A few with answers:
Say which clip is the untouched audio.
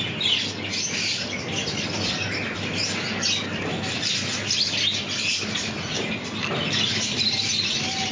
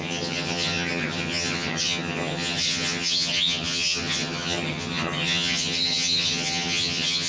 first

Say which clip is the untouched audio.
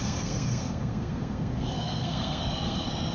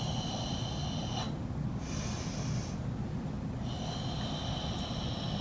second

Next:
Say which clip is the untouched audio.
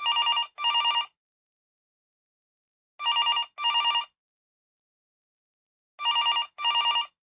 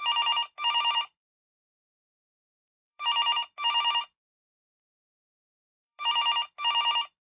first